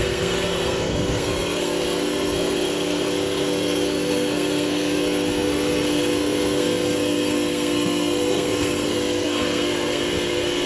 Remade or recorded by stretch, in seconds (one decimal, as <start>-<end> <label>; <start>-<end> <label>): 0.0-10.7 remade